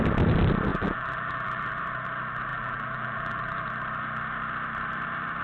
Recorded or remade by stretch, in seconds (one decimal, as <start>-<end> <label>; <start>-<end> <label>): 0.0-0.7 recorded; 0.7-1.8 remade; 1.8-2.5 recorded; 2.5-3.7 remade; 3.7-5.4 recorded